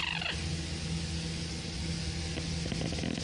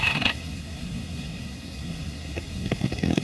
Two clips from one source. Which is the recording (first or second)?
first